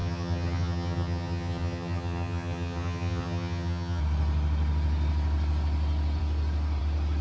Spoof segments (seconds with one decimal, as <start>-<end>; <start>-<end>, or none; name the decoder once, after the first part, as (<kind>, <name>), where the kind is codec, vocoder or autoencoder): 0.0-4.0 (vocoder, HiFi-GAN)